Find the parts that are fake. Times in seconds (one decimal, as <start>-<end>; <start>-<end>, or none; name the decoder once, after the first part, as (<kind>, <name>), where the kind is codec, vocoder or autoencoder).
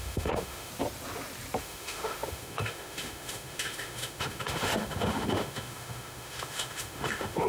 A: 0.0-0.7 (autoencoder, DAC-VAE); 1.6-7.5